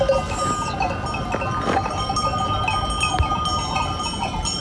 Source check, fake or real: real